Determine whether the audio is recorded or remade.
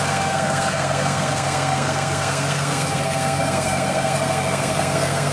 remade